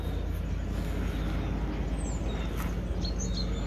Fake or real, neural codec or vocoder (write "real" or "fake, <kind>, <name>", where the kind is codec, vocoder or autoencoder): real